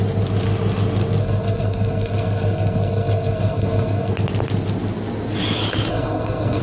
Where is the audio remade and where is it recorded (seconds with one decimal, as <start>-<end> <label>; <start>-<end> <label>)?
0.0-1.2 recorded; 1.2-4.1 remade; 4.1-5.9 recorded; 5.9-6.6 remade